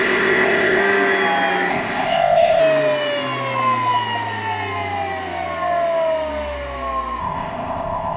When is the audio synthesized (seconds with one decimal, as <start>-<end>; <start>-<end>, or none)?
0.0-0.8; 1.7-2.6; 7.2-8.2